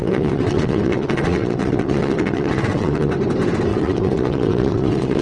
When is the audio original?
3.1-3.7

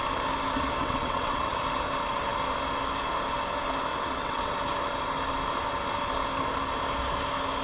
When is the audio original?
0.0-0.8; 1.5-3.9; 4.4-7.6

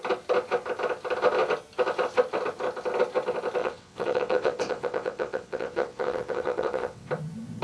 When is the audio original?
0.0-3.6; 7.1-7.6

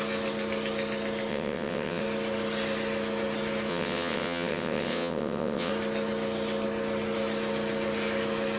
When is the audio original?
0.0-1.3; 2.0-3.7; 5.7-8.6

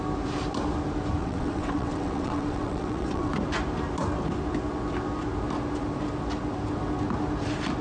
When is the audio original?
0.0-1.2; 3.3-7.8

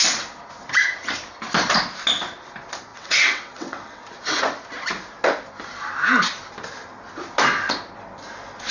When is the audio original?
0.0-2.9; 4.0-8.7

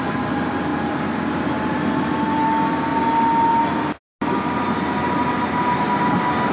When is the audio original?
0.0-6.5

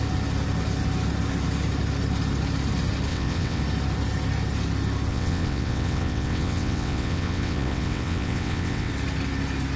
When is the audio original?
0.0-3.1; 3.6-5.1; 8.9-9.8